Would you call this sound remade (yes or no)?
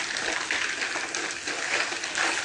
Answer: no